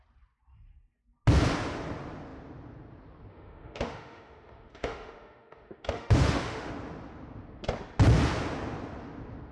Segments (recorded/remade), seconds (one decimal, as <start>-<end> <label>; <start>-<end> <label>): 0.0-3.3 recorded; 3.3-6.7 remade; 6.7-9.5 recorded